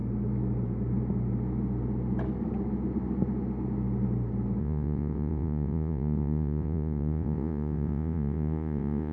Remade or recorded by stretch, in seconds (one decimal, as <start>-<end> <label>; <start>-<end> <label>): 0.0-4.6 recorded; 4.6-9.1 remade